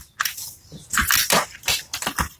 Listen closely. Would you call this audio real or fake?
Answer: real